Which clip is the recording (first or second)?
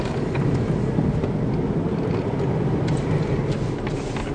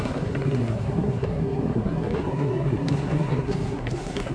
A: first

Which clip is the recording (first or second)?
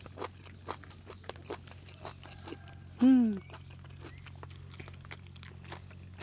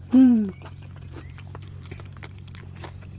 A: first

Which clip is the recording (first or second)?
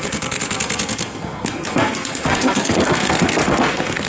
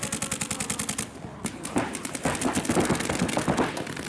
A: second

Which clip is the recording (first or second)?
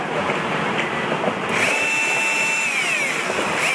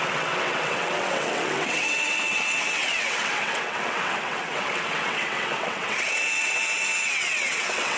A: first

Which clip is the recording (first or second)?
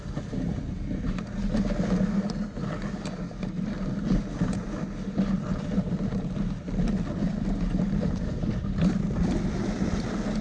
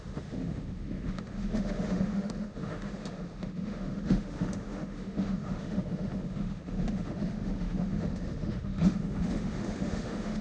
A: first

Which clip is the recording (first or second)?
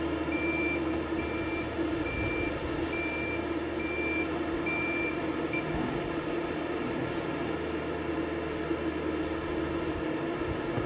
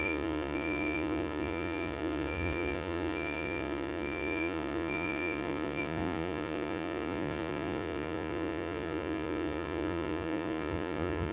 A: first